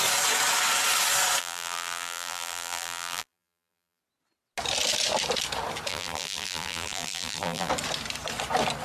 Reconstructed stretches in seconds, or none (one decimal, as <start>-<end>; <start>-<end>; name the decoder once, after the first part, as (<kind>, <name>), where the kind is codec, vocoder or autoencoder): 1.4-4.0 (vocoder, BigVGAN v2); 5.9-7.7